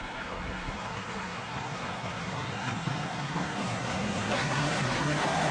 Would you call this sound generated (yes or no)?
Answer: yes